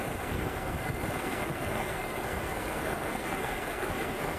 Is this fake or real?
fake